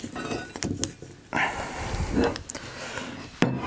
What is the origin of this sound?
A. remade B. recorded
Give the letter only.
B